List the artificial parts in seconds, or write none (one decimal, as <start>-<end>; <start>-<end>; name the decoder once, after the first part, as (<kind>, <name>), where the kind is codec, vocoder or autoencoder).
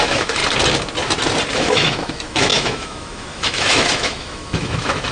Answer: 0.0-0.4 (autoencoder, DAC-VAE); 1.5-5.1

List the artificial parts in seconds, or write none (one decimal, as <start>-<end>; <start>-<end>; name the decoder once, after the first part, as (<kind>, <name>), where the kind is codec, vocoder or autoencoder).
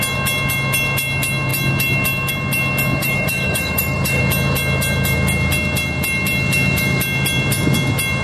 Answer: 3.0-4.2 (autoencoder, DAC-VAE)